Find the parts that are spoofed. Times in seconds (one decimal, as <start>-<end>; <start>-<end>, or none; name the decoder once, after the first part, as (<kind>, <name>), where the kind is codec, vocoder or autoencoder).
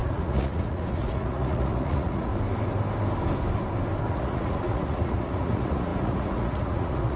0.0-2.3 (vocoder, Vocos); 4.1-7.2